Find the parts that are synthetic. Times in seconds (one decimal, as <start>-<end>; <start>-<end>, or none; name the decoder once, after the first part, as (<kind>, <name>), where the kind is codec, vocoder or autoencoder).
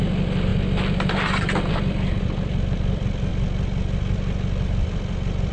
0.0-0.5 (vocoder, BigVGAN v2); 1.7-3.3; 4.8-5.5